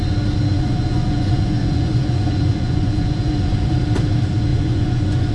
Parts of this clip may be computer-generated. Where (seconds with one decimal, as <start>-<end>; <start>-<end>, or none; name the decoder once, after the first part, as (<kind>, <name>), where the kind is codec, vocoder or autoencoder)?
0.5-3.7 (vocoder, Vocos); 4.5-5.3